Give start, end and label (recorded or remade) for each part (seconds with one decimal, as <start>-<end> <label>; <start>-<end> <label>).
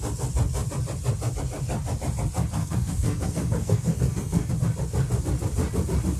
0.0-2.6 recorded; 2.6-4.5 remade; 4.5-6.2 recorded